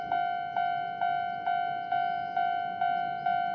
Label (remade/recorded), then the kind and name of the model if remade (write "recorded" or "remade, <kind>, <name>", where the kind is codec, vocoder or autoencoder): recorded